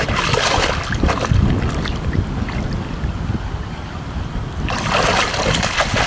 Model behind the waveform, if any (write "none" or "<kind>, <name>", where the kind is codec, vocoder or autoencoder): none